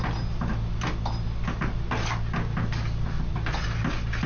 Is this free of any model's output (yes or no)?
yes